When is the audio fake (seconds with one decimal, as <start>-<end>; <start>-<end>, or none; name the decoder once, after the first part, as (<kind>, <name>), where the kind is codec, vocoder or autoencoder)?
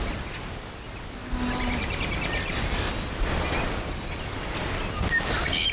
none